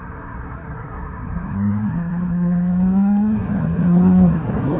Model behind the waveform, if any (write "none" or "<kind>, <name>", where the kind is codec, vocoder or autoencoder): codec, SNAC